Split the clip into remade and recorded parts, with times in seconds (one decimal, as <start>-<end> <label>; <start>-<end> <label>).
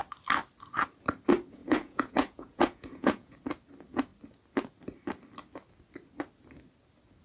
0.0-1.6 recorded; 1.6-3.4 remade; 3.4-7.2 recorded